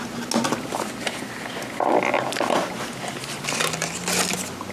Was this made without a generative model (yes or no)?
yes